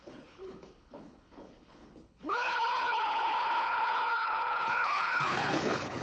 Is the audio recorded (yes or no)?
no